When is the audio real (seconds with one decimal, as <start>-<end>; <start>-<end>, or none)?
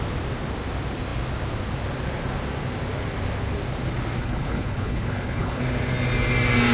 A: 0.0-4.2; 5.6-6.7